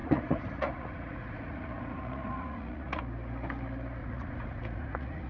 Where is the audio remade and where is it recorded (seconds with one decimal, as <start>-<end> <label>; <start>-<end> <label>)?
0.0-3.0 remade; 3.0-4.0 recorded; 4.0-5.3 remade